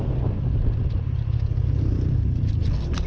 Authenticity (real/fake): real